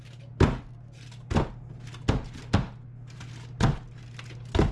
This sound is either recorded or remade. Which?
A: recorded